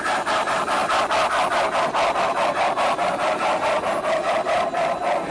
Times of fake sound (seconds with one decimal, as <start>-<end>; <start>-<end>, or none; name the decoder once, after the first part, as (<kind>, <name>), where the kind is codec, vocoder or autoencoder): none

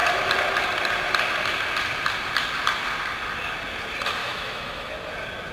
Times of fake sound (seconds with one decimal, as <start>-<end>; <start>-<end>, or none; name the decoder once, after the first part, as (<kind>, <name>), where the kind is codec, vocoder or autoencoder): 4.2-4.9 (autoencoder, DAC-VAE)

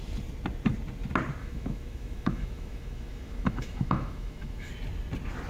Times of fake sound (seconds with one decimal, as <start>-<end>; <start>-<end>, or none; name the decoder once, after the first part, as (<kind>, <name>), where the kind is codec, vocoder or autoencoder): 1.4-4.7 (autoencoder, DAC-VAE)

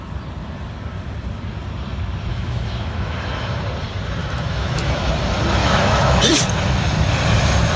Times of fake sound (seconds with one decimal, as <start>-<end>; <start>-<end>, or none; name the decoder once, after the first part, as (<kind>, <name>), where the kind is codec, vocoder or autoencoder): 2.3-3.6 (autoencoder, DAC-VAE); 4.2-5.1; 5.6-6.2